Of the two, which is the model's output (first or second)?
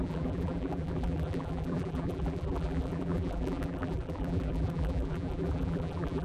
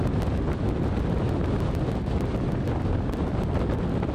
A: first